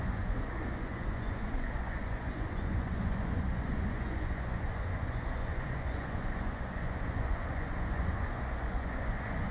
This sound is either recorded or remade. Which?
remade